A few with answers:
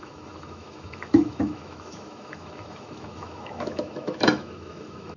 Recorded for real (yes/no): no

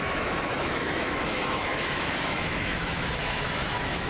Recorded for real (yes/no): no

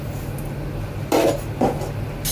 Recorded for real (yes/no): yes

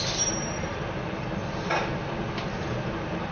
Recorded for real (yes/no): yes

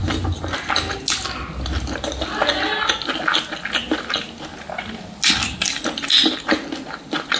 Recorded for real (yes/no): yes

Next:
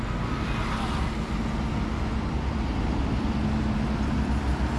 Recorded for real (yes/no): yes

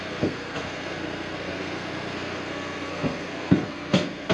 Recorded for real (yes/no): no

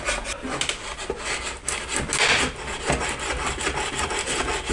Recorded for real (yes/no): yes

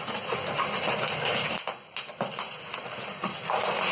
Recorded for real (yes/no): yes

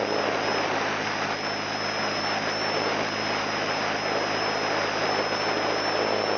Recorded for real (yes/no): yes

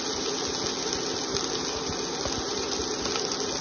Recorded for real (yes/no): yes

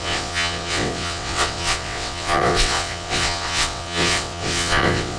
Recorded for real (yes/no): no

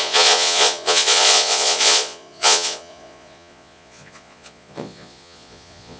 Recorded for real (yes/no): no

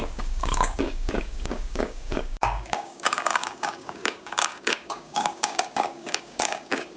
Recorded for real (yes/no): no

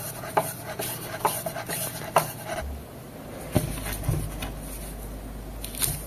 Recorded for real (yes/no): yes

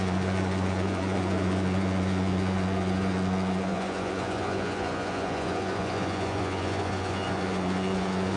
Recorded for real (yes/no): no